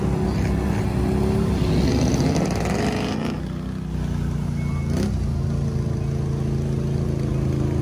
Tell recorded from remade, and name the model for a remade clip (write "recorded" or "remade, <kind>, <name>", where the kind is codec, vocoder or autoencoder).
recorded